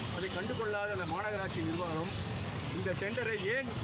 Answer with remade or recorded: remade